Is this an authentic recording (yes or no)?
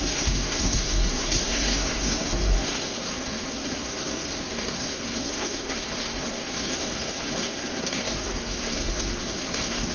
no